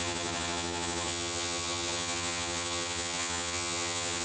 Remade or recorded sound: remade